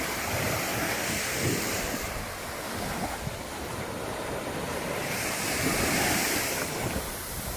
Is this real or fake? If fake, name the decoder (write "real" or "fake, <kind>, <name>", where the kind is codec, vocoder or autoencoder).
fake, vocoder, BigVGAN v2